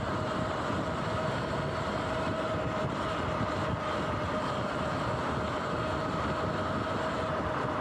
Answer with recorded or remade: recorded